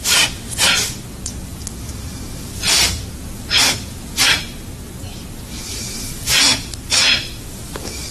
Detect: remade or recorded recorded